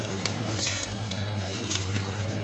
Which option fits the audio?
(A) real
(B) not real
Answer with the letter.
B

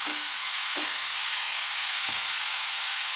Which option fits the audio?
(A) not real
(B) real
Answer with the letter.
A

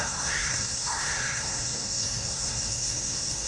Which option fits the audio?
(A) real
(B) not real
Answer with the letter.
B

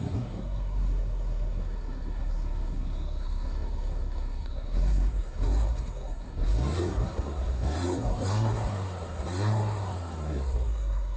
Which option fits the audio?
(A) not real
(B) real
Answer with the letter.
A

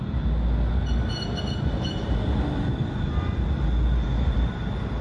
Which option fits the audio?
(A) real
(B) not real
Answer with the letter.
A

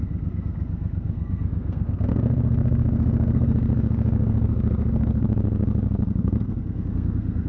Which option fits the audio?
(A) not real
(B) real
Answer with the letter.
A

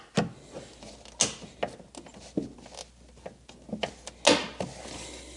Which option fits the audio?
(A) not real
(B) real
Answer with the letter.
B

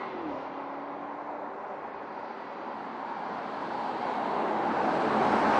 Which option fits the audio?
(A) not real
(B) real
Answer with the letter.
B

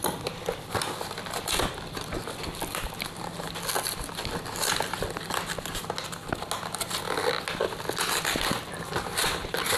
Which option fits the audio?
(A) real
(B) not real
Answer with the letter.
A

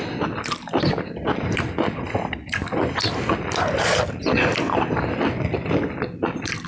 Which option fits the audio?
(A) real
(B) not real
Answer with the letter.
A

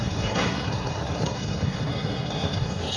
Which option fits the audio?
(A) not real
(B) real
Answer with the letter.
A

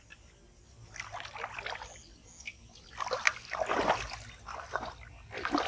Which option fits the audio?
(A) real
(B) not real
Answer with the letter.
A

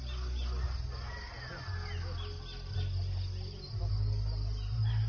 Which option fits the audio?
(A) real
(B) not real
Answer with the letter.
A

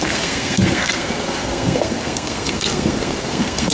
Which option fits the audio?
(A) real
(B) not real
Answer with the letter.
B